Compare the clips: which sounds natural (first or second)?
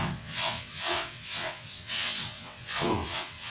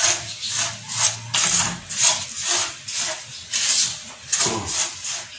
second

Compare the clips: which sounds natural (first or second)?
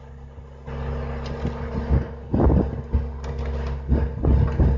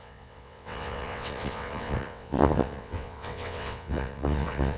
first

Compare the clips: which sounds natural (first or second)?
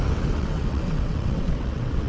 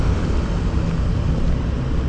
second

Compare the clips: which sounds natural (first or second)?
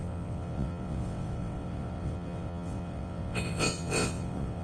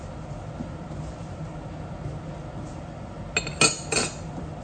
second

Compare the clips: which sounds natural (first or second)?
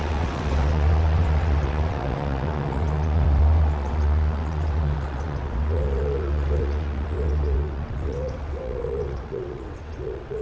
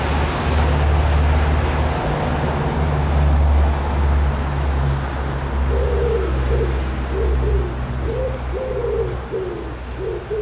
second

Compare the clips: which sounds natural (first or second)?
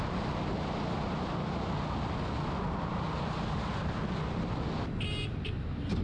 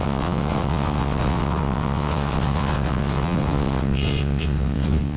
first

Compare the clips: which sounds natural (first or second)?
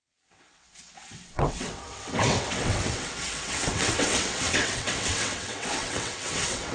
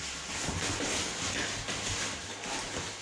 second